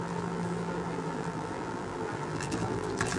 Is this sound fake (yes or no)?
yes